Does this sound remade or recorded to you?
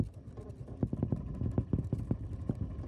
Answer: recorded